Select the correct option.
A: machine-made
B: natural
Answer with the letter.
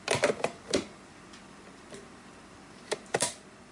A